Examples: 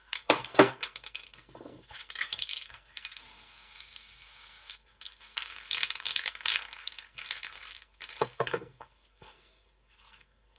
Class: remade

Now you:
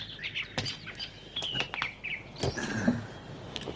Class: recorded